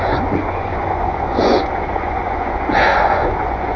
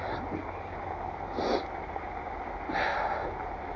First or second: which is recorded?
second